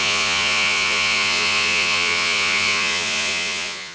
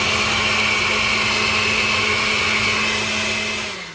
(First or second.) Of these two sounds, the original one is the second